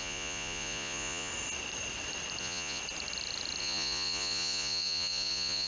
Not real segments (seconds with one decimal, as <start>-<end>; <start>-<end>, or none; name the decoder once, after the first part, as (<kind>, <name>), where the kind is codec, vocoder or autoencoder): 0.0-1.3 (vocoder, Vocos); 2.4-2.8; 3.6-5.7